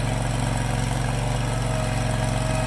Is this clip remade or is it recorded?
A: recorded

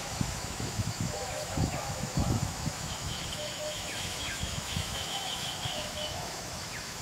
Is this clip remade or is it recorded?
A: remade